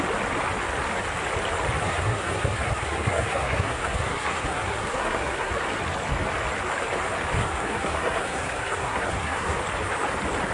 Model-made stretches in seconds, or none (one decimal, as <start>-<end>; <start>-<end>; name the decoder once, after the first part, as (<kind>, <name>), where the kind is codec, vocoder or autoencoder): 1.8-5.5 (codec, SNAC); 7.4-9.6

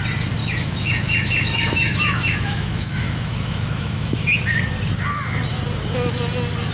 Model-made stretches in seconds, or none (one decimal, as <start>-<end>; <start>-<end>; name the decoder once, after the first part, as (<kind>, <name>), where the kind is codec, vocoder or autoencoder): 0.4-4.4 (autoencoder, DAC-VAE)